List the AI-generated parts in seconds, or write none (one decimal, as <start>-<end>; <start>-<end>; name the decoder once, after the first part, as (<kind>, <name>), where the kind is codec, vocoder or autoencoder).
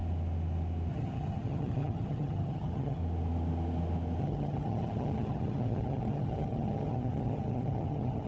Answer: 0.9-3.0 (vocoder, HiFi-GAN); 4.2-8.3